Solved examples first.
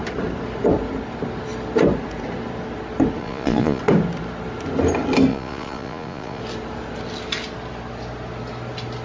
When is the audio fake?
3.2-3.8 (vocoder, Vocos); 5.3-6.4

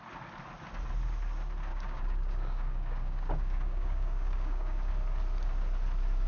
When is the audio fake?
1.7-4.9 (codec, DAC)

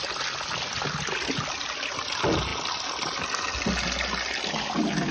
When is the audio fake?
none

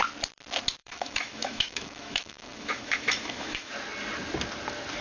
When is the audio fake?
0.8-3.7 (autoencoder, DAC-VAE)

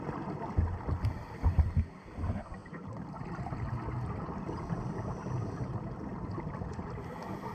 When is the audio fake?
2.6-3.4 (vocoder, BigVGAN v2)

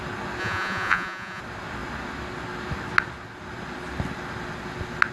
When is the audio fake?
0.4-1.4 (vocoder, Vocos)

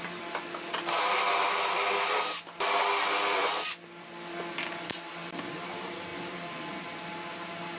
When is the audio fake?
none

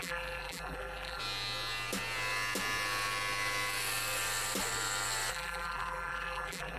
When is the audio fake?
0.0-1.2 (vocoder, BigVGAN v2); 5.3-6.8